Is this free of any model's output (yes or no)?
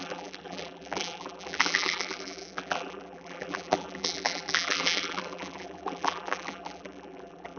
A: no